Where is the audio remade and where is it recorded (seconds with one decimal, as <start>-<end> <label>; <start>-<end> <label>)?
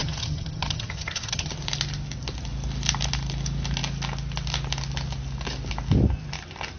0.0-1.5 remade; 1.5-6.8 recorded